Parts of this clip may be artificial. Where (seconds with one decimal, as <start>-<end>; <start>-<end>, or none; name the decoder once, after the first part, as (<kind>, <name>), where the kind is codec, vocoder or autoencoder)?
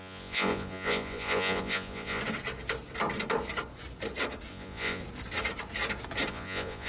0.0-2.2 (vocoder, Vocos); 4.5-5.0; 6.3-6.9